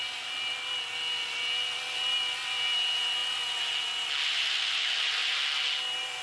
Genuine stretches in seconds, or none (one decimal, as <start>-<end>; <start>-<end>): 0.0-6.2